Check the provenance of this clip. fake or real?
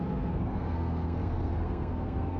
fake